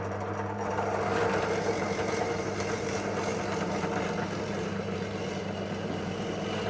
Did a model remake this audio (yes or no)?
yes